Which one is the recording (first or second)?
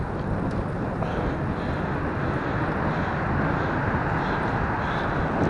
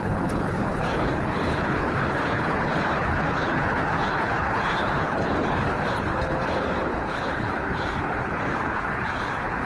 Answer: first